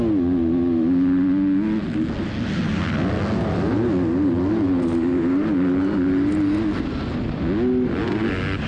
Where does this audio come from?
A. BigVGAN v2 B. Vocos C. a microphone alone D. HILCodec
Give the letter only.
C